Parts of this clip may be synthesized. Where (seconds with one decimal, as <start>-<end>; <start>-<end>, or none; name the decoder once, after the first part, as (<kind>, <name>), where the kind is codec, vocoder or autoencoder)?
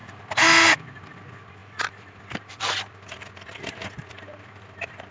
0.0-0.7 (vocoder, BigVGAN v2); 1.6-5.1